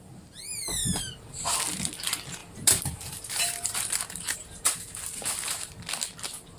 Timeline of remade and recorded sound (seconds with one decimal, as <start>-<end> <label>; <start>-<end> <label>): 0.0-2.4 recorded; 2.4-5.7 remade; 5.7-6.6 recorded